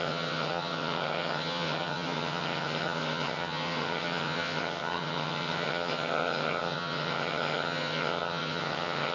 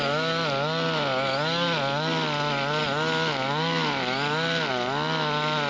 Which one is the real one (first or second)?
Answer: second